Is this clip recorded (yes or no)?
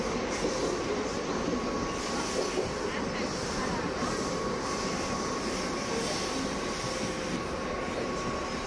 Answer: yes